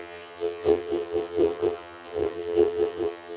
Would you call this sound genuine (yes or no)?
no